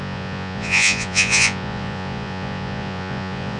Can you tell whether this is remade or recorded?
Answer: remade